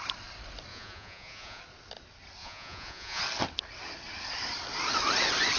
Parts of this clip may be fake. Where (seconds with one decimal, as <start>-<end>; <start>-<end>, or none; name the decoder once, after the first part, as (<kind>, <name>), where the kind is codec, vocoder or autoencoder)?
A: 0.7-1.6 (vocoder, Vocos); 2.4-3.2